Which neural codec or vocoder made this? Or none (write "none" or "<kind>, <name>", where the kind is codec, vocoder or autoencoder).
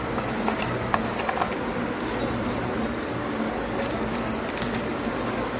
none